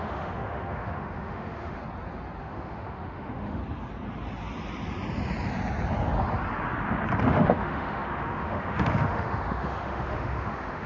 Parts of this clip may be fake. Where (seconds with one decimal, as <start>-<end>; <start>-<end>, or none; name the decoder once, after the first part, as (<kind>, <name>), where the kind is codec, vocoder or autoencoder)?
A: 0.0-1.8 (autoencoder, DAC-VAE); 2.4-3.6; 7.2-10.9